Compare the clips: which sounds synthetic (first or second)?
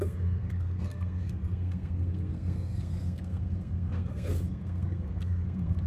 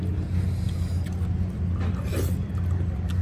first